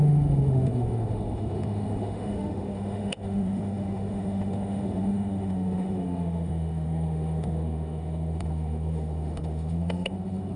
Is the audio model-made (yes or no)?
yes